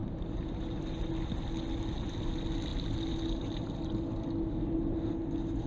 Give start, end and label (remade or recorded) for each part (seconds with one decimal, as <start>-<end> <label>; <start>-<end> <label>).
0.0-1.0 remade; 1.0-5.7 recorded